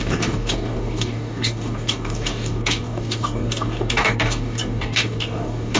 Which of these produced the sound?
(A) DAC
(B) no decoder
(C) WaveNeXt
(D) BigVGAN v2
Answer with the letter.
A